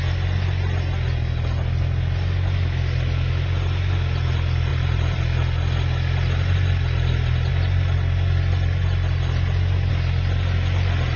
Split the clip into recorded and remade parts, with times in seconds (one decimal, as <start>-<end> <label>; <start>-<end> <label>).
0.0-4.7 recorded; 4.7-5.2 remade; 5.2-11.2 recorded